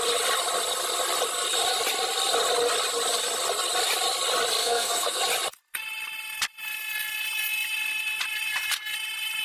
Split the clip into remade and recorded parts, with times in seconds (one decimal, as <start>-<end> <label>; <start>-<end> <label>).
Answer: 0.0-4.6 recorded; 4.6-5.2 remade; 5.2-9.4 recorded